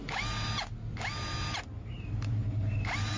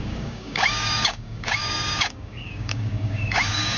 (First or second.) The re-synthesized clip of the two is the second